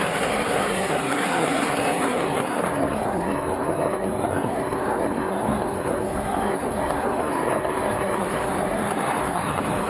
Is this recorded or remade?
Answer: remade